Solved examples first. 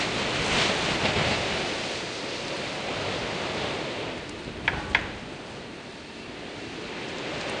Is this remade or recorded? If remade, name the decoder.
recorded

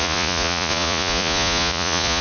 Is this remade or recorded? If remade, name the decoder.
remade, vocoder, Vocos